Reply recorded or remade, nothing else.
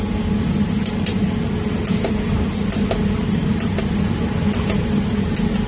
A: recorded